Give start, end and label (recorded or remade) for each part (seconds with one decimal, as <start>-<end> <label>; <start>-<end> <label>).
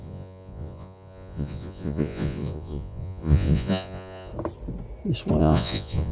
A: 0.0-4.3 remade; 4.3-5.4 recorded; 5.4-6.1 remade